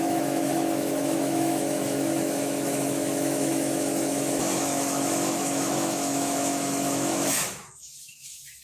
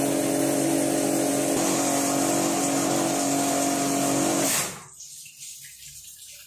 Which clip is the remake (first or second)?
first